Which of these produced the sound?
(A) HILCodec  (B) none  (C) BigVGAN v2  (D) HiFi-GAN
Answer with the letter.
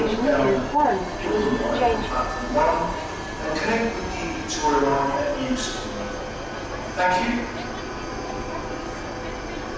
B